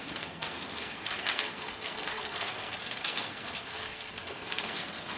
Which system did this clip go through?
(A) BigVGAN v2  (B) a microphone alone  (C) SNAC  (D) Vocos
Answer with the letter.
C